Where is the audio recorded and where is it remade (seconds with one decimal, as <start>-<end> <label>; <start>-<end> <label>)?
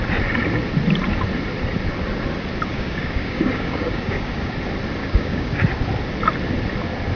0.0-2.7 recorded; 2.7-4.5 remade; 4.5-5.0 recorded; 5.0-5.6 remade; 5.6-7.2 recorded